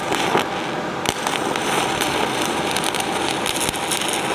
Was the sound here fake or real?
real